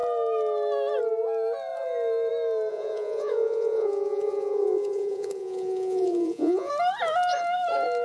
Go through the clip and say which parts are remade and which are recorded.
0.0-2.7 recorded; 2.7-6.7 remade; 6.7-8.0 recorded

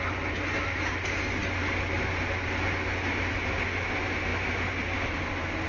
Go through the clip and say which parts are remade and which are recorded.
0.0-5.7 recorded

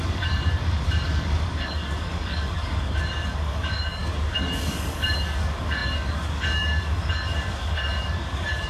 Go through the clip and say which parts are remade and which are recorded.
0.0-8.7 remade

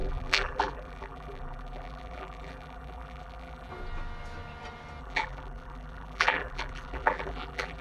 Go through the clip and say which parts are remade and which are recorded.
0.0-3.7 remade; 3.7-5.0 recorded; 5.0-7.8 remade

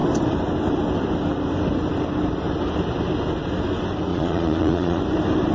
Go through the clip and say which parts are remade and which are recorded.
0.0-4.1 recorded; 4.1-5.0 remade; 5.0-5.5 recorded

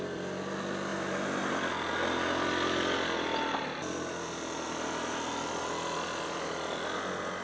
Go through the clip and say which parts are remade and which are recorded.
0.0-7.4 recorded

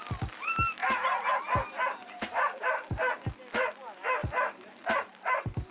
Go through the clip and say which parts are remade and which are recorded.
0.0-2.0 recorded; 2.0-3.3 remade; 3.3-4.2 recorded; 4.2-5.7 remade